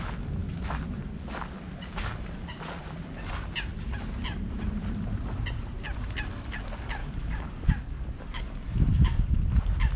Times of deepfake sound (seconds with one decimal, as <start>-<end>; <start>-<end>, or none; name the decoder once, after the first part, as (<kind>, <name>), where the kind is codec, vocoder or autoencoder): 7.0-8.4 (codec, DAC); 8.9-9.4